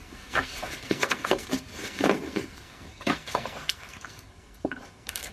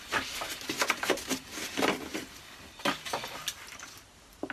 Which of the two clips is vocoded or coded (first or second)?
first